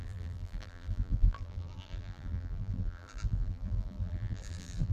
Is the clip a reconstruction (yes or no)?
yes